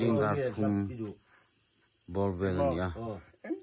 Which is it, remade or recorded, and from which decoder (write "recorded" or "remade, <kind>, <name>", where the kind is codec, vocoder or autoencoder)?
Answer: recorded